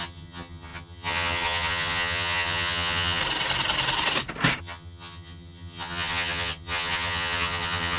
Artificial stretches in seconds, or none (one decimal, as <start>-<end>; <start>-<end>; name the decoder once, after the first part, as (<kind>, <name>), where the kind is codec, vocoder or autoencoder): 0.0-3.2 (vocoder, HiFi-GAN); 4.6-8.0